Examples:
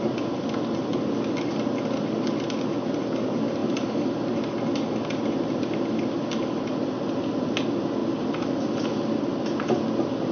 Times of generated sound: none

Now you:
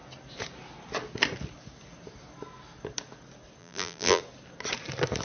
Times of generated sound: 3.6-4.2 (vocoder, BigVGAN v2)

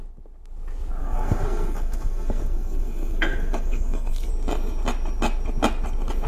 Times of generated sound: 1.0-4.3 (codec, SNAC)

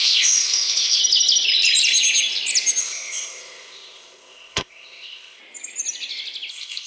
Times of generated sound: 0.0-1.0 (codec, ZipCodec); 2.8-5.4; 6.5-6.9

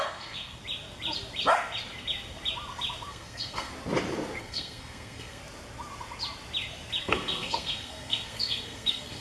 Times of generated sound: 0.0-0.6 (codec, SNAC); 3.1-3.7; 4.4-5.4; 7.0-9.2

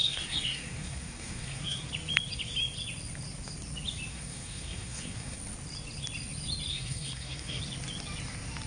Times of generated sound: 0.0-1.9 (codec, SNAC); 4.1-5.4; 6.7-7.6

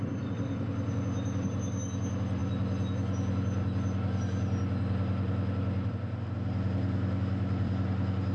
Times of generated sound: none

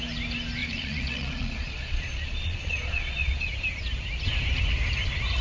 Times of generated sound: 0.6-3.5 (vocoder, Vocos)